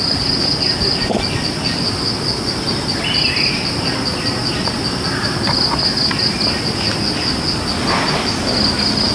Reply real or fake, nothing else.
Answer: real